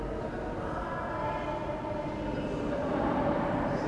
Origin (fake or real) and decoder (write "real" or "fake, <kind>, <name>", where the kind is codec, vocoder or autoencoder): real